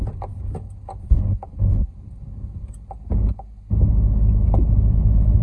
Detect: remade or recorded recorded